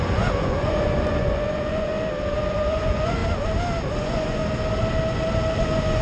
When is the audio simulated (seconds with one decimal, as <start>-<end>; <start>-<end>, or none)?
0.0-1.9; 2.5-3.2; 3.9-4.4; 5.6-6.0